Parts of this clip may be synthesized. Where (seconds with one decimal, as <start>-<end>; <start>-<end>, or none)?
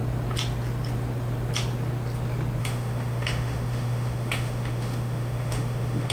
2.6-6.1